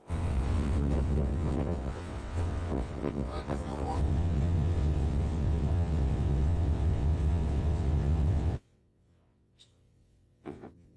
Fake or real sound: fake